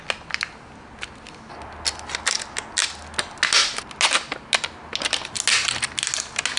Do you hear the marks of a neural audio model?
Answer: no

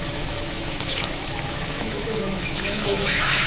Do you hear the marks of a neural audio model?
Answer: yes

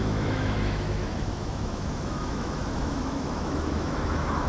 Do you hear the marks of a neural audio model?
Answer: yes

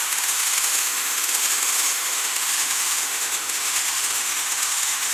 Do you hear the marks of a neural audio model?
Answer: yes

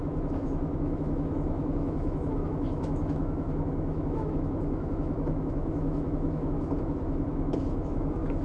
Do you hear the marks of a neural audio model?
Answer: yes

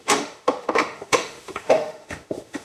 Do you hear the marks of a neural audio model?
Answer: yes